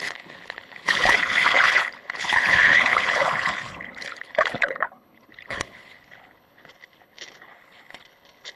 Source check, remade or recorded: remade